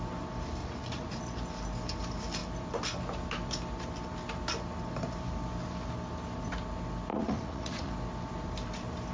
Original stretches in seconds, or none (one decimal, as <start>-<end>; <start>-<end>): 0.0-0.6; 1.2-7.1; 7.9-9.1